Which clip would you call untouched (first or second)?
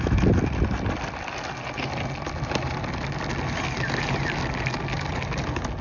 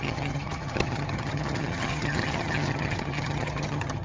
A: first